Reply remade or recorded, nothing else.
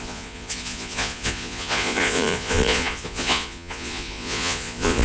remade